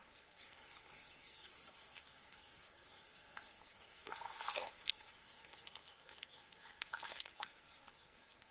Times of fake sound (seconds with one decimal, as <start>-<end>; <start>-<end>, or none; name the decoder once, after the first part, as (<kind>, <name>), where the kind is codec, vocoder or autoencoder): 0.0-8.5 (codec, SNAC)